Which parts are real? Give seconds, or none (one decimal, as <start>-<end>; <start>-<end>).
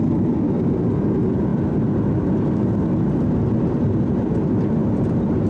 0.0-5.5